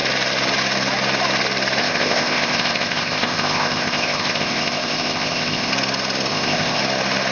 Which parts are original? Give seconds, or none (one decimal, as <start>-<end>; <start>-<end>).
0.0-1.8; 5.7-6.3; 6.8-7.3